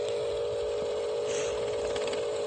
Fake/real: real